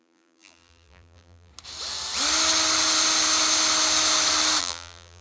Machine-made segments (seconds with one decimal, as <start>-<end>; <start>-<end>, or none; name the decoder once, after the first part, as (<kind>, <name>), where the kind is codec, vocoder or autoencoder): 0.0-1.5 (vocoder, BigVGAN v2); 4.6-5.2